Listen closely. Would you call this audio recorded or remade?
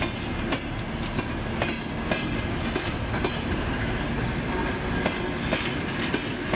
recorded